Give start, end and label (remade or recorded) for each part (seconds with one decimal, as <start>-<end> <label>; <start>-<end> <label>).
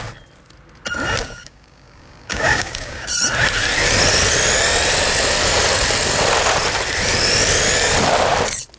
0.0-1.2 recorded; 1.2-3.1 remade; 3.1-8.8 recorded